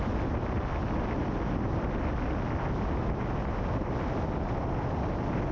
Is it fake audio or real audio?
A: real